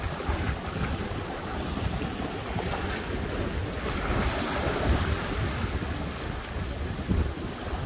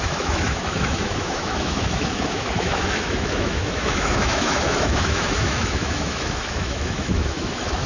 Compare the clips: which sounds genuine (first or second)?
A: first